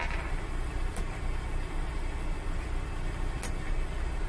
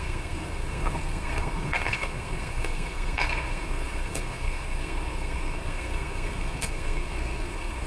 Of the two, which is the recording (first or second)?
first